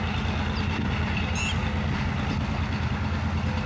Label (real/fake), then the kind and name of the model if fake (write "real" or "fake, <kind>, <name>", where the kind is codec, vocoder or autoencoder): real